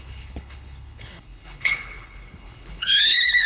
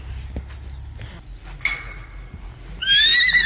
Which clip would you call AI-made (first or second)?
first